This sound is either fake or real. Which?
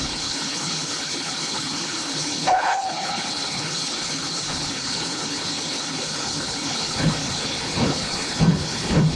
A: fake